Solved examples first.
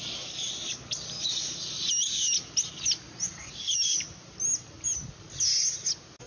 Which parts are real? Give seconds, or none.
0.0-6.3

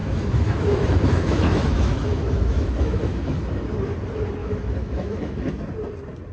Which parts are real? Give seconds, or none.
3.4-4.4; 5.5-6.3

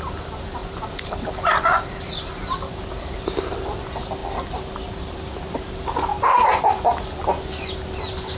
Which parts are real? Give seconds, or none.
0.0-0.6; 2.3-8.4

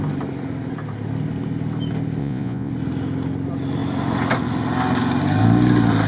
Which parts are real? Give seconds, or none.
0.0-2.2; 2.7-6.1

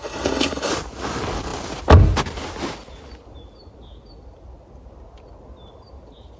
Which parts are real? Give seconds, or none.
0.7-6.4

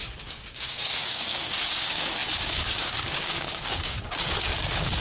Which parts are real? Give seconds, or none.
none

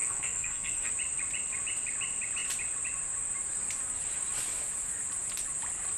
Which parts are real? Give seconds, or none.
0.9-6.0